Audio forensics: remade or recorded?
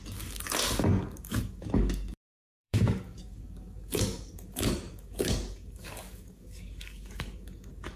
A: remade